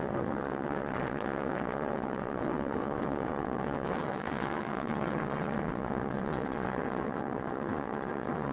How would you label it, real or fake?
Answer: fake